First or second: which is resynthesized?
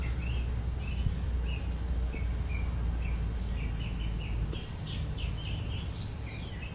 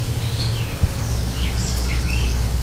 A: second